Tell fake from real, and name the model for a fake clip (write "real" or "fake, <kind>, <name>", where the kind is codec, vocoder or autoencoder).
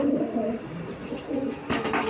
fake, vocoder, BigVGAN v2